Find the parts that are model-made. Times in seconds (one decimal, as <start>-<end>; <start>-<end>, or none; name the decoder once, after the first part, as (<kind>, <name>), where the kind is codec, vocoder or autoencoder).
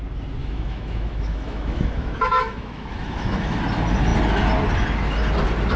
0.4-3.6 (autoencoder, DAC-VAE)